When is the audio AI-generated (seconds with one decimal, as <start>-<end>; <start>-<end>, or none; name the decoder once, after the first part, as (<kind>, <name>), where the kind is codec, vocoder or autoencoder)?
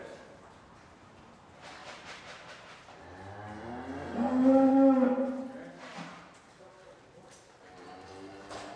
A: 1.8-2.5 (vocoder, BigVGAN v2); 4.4-5.4; 5.9-8.8